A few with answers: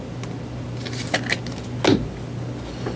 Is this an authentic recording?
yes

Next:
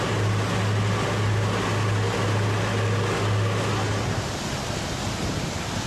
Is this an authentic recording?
yes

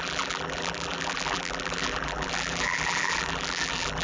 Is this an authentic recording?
no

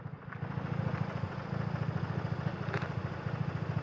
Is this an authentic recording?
yes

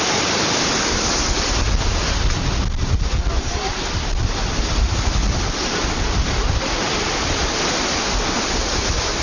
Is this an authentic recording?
yes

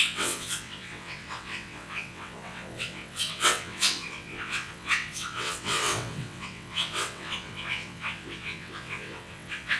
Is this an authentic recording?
no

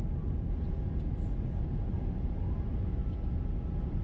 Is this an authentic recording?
yes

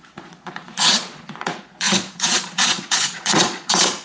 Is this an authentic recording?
no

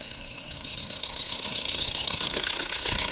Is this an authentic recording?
no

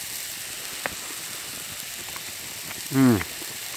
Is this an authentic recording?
yes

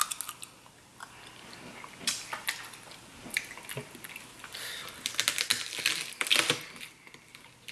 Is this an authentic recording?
yes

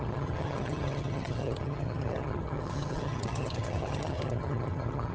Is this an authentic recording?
no